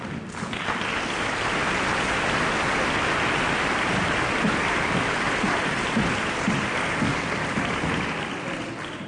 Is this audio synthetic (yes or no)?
no